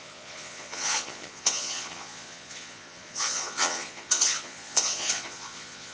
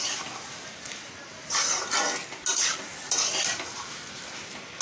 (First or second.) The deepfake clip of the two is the first